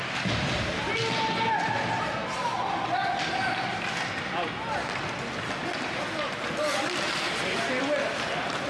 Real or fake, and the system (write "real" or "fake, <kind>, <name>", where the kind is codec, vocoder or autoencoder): real